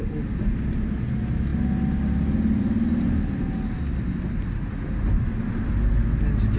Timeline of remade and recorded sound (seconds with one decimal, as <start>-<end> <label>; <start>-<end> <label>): 0.0-6.6 recorded